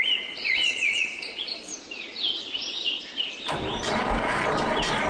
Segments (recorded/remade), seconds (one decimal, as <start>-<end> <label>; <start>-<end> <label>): 0.0-1.7 remade; 1.7-5.1 recorded